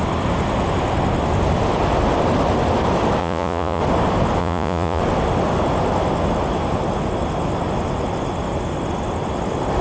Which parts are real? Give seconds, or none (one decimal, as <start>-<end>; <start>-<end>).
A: 0.0-3.2; 3.8-4.4; 5.0-9.8